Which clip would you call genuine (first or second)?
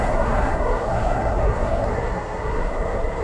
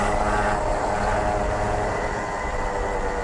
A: second